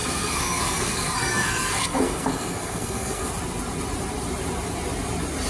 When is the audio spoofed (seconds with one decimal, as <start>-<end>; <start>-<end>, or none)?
0.0-3.3